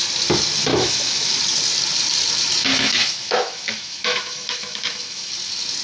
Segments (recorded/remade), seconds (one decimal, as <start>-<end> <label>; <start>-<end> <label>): 0.0-0.7 recorded; 0.7-1.4 remade; 1.4-2.7 recorded; 2.7-5.3 remade; 5.3-5.8 recorded